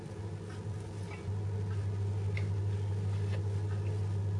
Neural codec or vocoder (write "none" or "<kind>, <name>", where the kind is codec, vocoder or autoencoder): none